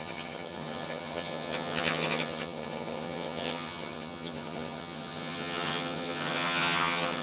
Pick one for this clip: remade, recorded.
remade